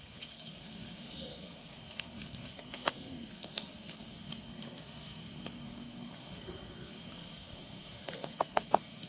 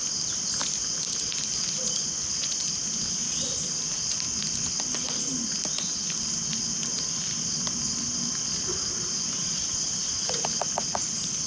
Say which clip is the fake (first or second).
first